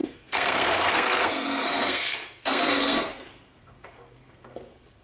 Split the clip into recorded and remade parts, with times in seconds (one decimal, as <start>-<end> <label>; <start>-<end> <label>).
0.0-5.0 remade